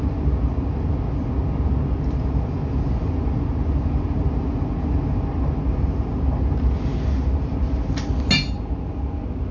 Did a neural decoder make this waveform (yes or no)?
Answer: no